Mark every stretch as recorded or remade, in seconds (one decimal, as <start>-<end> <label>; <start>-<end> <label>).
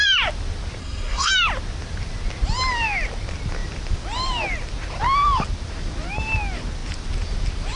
0.0-0.8 recorded; 0.8-1.3 remade; 1.3-7.8 recorded